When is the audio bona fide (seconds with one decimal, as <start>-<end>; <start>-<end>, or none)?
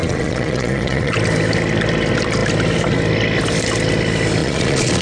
1.1-4.4